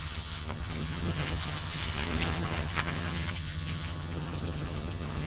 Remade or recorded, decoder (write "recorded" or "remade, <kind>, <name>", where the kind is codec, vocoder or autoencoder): remade, vocoder, HiFi-GAN